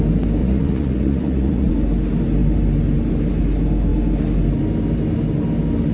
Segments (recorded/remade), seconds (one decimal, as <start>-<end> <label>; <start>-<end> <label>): 0.0-0.4 recorded; 0.4-1.7 remade; 1.7-5.9 recorded